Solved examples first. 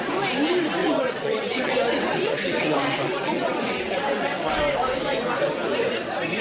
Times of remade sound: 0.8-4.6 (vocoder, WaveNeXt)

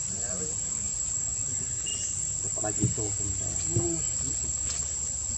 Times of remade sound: none

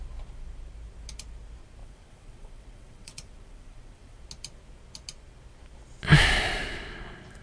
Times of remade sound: 1.8-4.2 (vocoder, WaveNeXt)